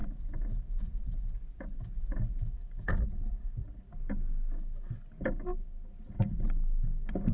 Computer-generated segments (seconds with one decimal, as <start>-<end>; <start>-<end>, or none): 0.0-2.9